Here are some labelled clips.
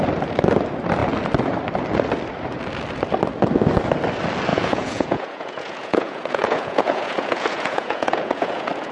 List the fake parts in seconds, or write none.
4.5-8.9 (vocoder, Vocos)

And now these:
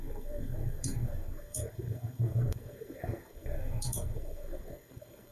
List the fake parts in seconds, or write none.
0.0-5.3 (codec, SNAC)

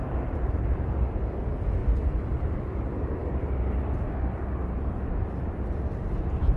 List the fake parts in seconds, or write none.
none

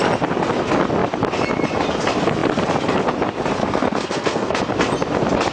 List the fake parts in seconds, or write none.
3.6-4.6 (codec, SNAC)